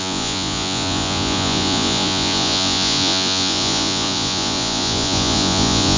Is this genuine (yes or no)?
no